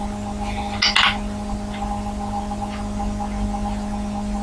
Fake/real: real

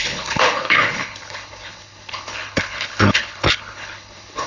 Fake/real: fake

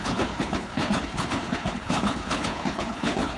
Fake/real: fake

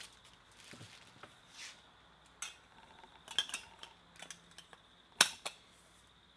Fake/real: real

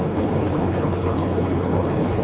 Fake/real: fake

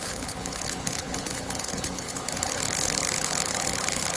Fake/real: fake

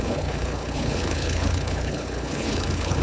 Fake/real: fake